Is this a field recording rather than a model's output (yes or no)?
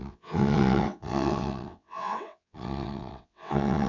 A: no